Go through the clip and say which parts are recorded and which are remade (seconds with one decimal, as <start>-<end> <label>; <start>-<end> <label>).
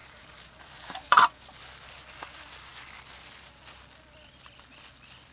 0.0-1.6 remade; 1.6-5.3 recorded